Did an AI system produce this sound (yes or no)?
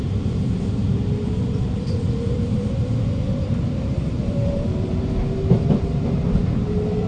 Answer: yes